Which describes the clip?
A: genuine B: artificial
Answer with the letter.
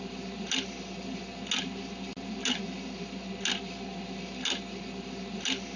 A